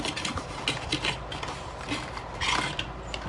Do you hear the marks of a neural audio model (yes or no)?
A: no